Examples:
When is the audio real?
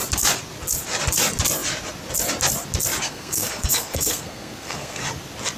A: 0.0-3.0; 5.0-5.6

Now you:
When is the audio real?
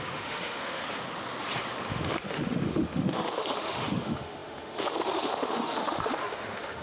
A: 0.8-1.9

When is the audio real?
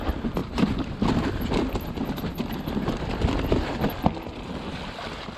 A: 0.0-5.4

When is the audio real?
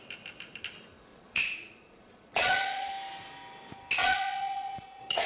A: 0.0-1.1; 2.9-4.0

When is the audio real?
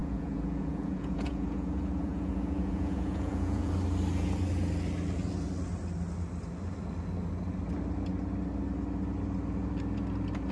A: 3.7-10.5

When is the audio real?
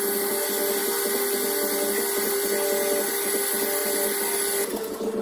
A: 0.0-5.2